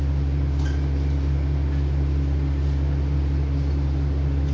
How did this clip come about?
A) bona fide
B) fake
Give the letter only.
A